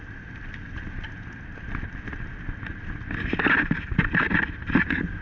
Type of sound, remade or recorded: recorded